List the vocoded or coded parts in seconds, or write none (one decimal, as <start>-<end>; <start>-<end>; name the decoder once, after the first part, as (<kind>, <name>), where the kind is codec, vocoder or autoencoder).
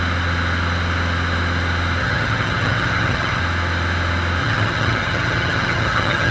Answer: 2.0-3.4 (vocoder, HiFi-GAN); 4.4-6.3